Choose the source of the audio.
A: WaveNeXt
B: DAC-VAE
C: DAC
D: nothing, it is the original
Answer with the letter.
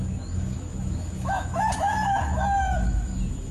B